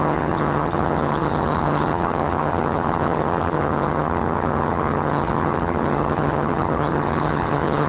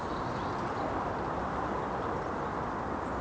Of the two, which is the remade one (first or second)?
first